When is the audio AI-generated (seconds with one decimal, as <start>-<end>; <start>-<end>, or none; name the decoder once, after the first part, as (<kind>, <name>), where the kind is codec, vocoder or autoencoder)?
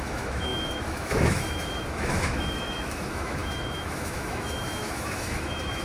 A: 0.0-5.8 (autoencoder, DAC-VAE)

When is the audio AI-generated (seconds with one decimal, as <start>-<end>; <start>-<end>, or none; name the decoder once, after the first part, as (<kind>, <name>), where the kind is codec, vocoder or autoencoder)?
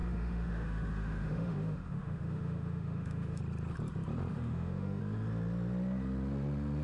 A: 0.0-3.4 (autoencoder, DAC-VAE); 4.3-5.0